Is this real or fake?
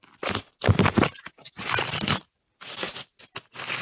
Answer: real